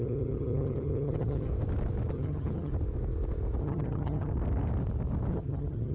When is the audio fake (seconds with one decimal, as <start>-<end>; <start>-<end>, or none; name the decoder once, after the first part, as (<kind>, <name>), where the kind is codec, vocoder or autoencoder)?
0.0-1.5 (vocoder, HiFi-GAN); 2.1-2.7; 3.6-4.3; 5.3-5.9